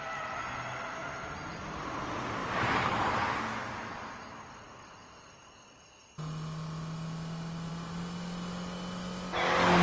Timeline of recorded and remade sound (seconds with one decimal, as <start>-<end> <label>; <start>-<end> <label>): 0.0-1.0 recorded; 1.0-1.6 remade; 1.6-9.8 recorded